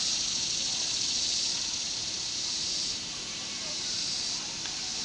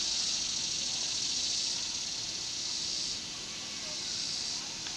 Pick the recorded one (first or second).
second